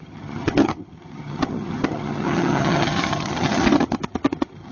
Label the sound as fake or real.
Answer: fake